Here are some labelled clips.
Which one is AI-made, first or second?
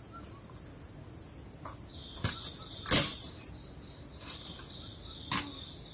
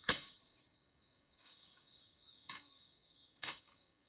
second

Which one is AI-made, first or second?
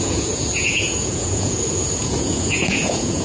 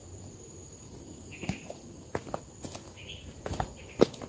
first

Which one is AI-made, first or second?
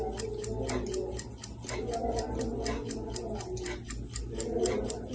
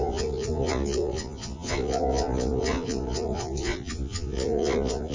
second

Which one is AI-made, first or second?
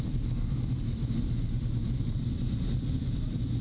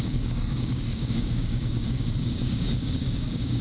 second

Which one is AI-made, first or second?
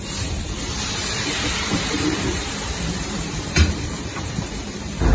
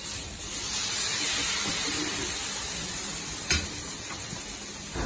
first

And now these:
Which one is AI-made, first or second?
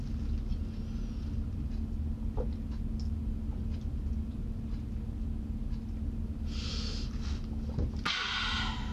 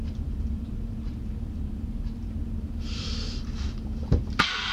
second